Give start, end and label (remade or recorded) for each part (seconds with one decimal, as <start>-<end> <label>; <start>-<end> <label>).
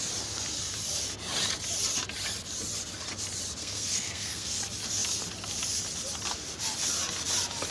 0.0-3.6 recorded; 3.6-4.6 remade; 4.6-7.7 recorded